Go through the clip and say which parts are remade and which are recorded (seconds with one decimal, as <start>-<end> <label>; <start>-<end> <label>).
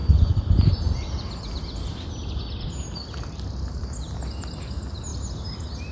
0.0-5.9 recorded